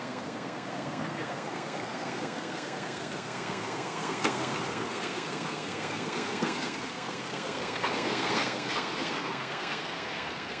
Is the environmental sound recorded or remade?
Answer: remade